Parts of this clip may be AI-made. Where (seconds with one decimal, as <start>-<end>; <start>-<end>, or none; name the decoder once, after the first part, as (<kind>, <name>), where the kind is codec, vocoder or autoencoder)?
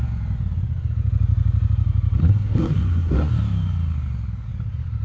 2.2-3.3 (codec, SNAC)